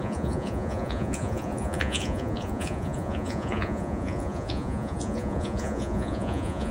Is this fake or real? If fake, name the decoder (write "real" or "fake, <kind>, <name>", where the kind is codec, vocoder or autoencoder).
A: fake, vocoder, Vocos